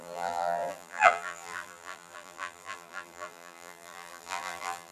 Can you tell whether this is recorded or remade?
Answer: remade